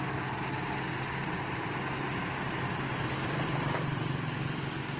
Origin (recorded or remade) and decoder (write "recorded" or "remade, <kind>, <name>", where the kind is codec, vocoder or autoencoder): recorded